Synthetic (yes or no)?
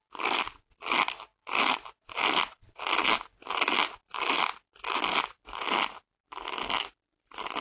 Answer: no